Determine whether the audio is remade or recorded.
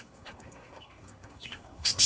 remade